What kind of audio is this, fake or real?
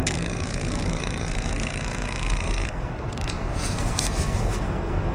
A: fake